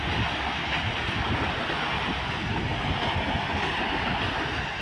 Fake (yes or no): no